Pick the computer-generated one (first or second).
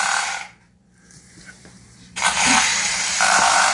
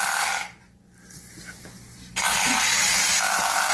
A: first